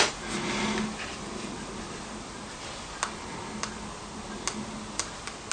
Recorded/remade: recorded